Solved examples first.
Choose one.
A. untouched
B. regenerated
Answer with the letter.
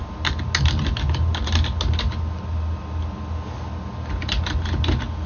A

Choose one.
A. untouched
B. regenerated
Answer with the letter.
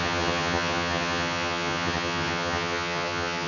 B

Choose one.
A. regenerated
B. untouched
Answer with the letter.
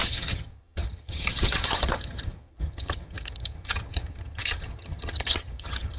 A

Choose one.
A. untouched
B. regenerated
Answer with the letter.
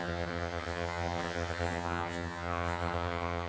B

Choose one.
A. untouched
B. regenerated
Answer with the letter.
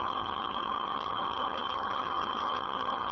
B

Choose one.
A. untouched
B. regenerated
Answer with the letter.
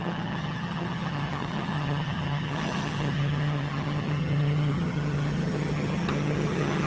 B